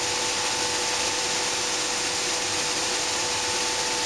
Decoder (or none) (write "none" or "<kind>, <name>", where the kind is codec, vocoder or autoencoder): none